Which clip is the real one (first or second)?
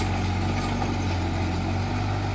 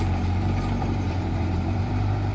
first